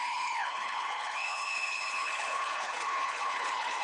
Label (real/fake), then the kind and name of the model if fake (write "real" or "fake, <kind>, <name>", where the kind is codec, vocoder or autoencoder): fake, codec, HILCodec